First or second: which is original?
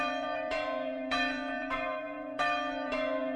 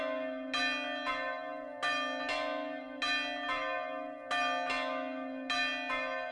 second